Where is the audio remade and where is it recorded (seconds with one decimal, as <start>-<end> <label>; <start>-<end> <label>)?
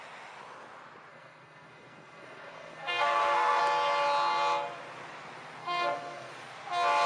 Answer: 0.0-1.1 recorded; 1.1-3.6 remade; 3.6-5.6 recorded; 5.6-6.3 remade; 6.3-7.1 recorded